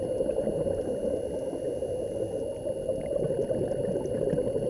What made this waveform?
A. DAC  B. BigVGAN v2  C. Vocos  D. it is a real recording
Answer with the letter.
D